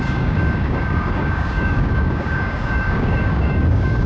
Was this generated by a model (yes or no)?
yes